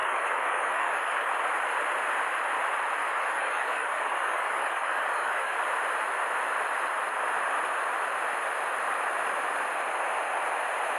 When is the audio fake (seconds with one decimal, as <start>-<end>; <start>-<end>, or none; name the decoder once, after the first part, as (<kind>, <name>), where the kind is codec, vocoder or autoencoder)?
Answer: 0.0-1.3 (codec, DAC); 3.0-5.6